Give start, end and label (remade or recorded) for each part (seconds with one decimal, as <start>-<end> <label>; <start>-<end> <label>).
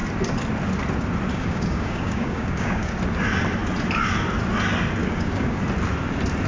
0.0-1.3 recorded; 1.3-2.9 remade; 2.9-5.0 recorded; 5.0-5.6 remade; 5.6-6.5 recorded